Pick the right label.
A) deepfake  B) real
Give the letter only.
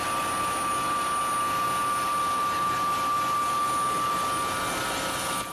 B